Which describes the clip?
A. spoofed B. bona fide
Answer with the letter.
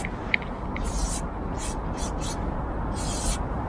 B